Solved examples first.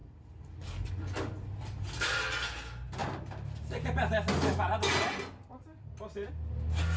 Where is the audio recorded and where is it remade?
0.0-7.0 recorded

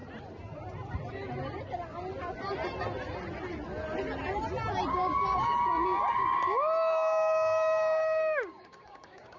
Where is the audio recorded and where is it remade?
0.0-4.9 recorded; 4.9-9.4 remade

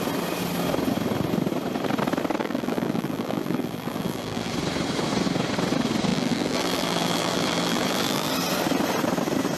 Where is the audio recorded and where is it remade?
0.0-2.4 recorded; 2.4-4.5 remade; 4.5-6.1 recorded; 6.1-8.3 remade; 8.3-9.6 recorded

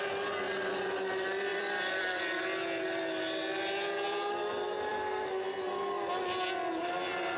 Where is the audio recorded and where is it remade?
0.0-1.5 recorded; 1.5-2.4 remade; 2.4-7.4 recorded